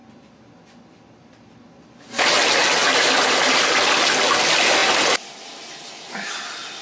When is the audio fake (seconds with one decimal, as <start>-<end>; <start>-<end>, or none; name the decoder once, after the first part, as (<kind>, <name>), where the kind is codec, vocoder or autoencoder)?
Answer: none